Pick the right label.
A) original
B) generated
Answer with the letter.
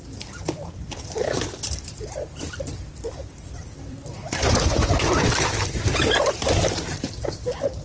B